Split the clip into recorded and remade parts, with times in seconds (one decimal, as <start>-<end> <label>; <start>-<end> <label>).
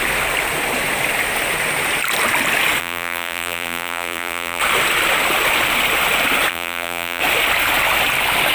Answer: 0.0-2.8 recorded; 2.8-4.6 remade; 4.6-6.5 recorded; 6.5-7.2 remade; 7.2-8.5 recorded